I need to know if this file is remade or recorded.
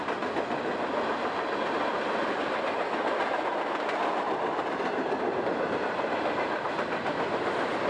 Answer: recorded